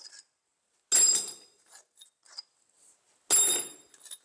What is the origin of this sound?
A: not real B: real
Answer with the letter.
B